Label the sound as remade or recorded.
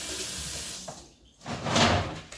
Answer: recorded